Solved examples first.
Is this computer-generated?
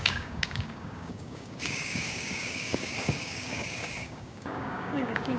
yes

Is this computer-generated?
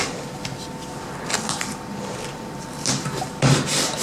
no